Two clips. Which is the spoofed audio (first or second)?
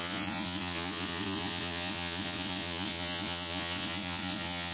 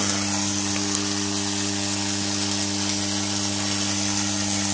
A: first